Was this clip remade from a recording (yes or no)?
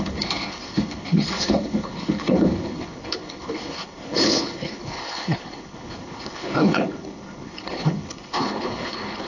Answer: yes